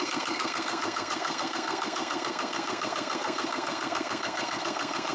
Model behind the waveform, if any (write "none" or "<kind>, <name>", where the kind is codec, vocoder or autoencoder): codec, SNAC